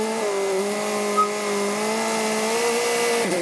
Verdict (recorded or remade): recorded